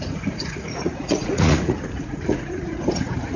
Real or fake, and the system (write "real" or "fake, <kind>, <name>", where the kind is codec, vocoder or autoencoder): fake, vocoder, Vocos